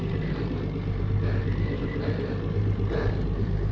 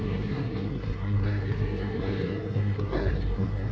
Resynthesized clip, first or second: second